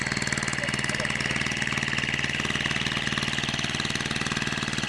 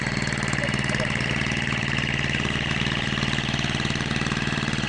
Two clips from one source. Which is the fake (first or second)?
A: second